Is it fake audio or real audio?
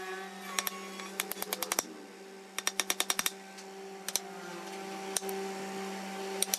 real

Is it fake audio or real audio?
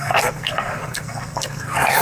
fake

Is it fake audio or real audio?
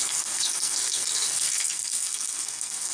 fake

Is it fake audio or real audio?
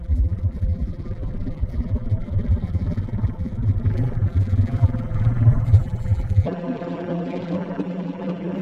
fake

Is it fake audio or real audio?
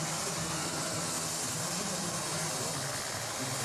real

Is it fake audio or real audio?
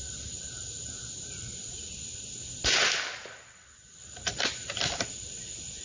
real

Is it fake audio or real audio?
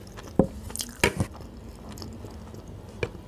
real